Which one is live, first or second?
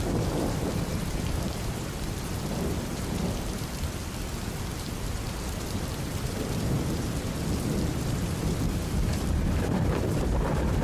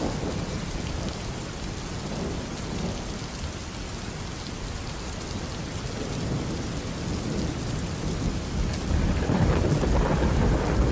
second